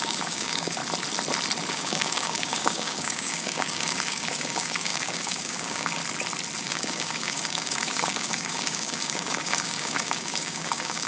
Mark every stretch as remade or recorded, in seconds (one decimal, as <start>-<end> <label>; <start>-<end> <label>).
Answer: 0.0-0.8 remade; 0.8-1.7 recorded; 1.7-6.0 remade; 6.0-6.6 recorded; 6.6-11.1 remade